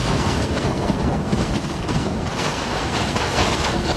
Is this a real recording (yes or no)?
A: no